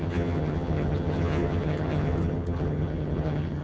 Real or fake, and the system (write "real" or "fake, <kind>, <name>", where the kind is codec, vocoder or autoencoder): fake, vocoder, HiFi-GAN